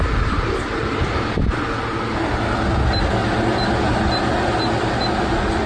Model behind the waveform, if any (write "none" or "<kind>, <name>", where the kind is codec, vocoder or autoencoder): none